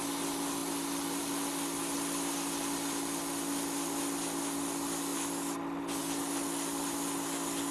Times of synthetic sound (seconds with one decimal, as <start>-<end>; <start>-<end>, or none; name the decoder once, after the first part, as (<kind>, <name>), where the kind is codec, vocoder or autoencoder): none